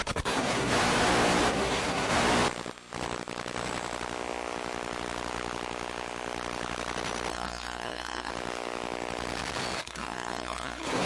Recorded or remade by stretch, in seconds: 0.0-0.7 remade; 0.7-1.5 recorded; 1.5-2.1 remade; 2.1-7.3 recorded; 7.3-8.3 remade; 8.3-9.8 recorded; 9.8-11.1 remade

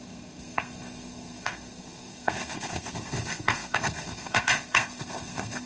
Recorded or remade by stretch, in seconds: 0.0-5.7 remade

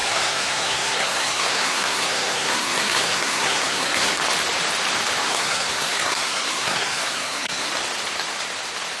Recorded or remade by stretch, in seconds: 0.0-4.1 remade; 4.1-5.2 recorded; 5.2-7.7 remade; 7.7-9.0 recorded